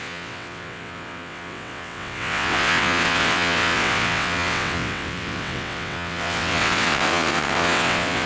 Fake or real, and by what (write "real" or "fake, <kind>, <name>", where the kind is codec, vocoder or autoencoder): fake, vocoder, WaveNeXt